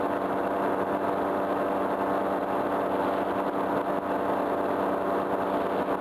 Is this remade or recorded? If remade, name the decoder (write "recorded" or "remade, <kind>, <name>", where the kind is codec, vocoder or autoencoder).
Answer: recorded